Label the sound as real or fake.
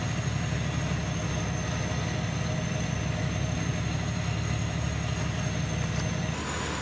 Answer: real